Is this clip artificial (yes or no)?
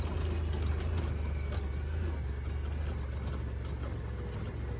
no